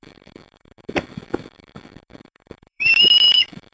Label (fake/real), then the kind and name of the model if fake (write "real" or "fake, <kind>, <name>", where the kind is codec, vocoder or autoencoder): fake, autoencoder, DAC-VAE